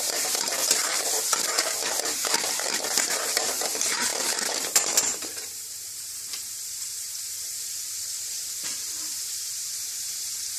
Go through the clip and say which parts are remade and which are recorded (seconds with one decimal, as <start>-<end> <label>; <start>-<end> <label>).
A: 0.0-0.6 remade; 0.6-1.9 recorded; 1.9-10.6 remade